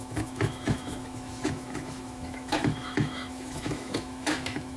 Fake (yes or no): yes